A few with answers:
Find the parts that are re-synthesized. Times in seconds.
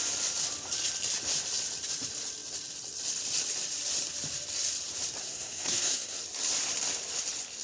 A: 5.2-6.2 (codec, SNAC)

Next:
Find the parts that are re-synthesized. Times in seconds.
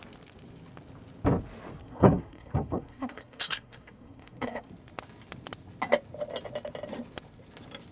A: 1.8-4.7 (codec, SNAC)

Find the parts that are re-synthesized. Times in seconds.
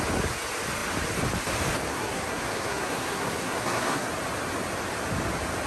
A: 1.9-4.1 (codec, SNAC)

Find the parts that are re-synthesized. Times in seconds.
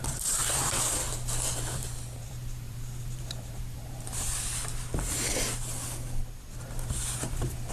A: 0.0-0.4 (vocoder, BigVGAN v2); 2.2-4.3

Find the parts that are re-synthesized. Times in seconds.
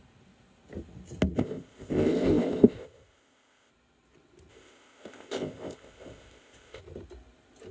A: 1.4-3.7 (codec, ZipCodec); 4.5-6.8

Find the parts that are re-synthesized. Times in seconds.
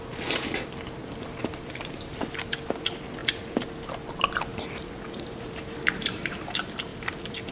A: 1.0-2.4 (vocoder, BigVGAN v2); 4.5-6.3; 6.9-7.5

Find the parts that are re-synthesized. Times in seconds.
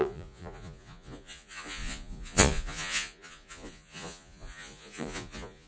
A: 0.0-5.7 (vocoder, Vocos)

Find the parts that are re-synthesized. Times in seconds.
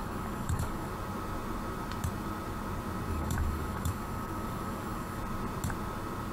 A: 0.0-0.9 (codec, DAC); 3.1-5.2